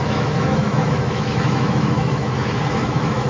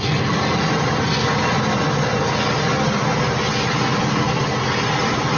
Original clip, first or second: second